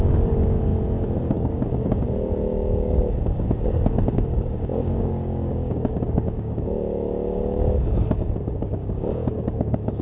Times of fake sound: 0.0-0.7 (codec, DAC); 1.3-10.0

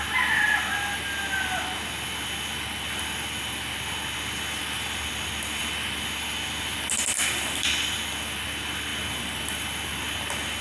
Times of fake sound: none

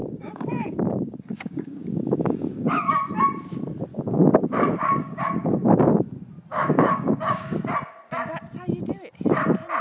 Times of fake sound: 0.0-2.9 (codec, DAC); 3.9-5.8; 6.5-7.6

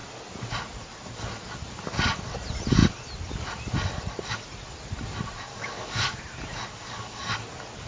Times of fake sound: 5.5-6.2 (codec, DAC); 6.7-7.2

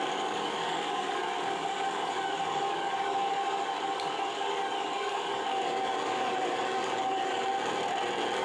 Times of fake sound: 0.0-7.5 (codec, DAC)

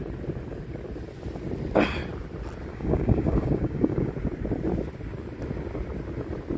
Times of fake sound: 2.7-4.1 (codec, DAC)